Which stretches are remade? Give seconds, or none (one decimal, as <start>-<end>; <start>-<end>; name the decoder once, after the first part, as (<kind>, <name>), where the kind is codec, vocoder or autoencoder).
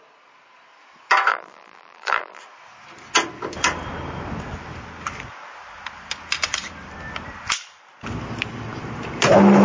1.3-2.4 (vocoder, BigVGAN v2)